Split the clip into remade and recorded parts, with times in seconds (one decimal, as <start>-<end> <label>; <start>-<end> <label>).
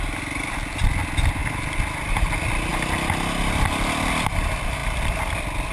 0.0-5.7 recorded